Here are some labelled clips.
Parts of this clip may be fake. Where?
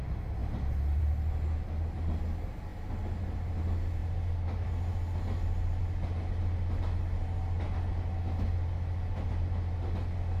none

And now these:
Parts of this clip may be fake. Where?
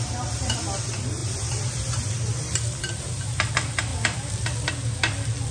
1.2-3.5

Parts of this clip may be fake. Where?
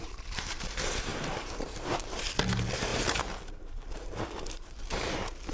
1.1-2.3; 2.9-5.1